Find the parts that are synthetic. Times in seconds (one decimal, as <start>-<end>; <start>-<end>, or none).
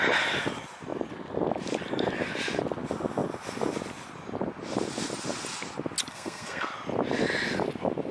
6.1-6.7